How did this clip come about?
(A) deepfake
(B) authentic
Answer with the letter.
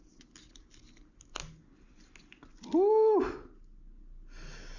B